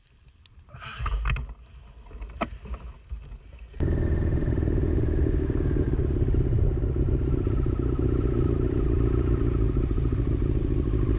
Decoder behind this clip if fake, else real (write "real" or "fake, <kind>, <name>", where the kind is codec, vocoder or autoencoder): real